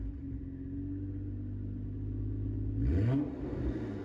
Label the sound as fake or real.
real